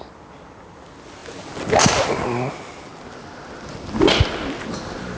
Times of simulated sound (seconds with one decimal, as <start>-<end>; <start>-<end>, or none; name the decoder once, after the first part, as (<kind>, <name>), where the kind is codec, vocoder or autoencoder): none